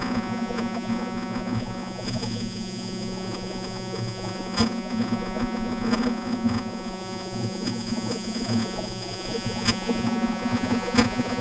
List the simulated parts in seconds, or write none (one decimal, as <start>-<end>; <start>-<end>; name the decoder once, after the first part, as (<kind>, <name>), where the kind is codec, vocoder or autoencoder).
0.0-11.4 (vocoder, Vocos)